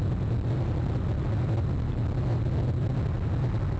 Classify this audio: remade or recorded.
recorded